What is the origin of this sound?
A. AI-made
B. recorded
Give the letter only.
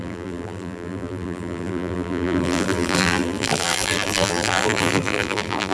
A